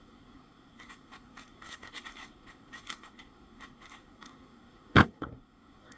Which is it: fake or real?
fake